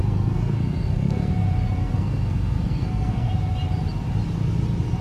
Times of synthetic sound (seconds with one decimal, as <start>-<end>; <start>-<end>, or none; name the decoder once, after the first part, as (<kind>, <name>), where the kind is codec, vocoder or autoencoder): 0.0-1.3 (codec, SNAC); 1.8-3.3